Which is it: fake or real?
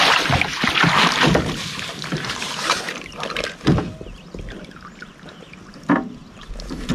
real